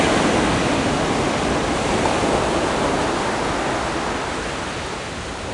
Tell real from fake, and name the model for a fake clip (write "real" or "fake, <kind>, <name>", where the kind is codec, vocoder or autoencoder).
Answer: real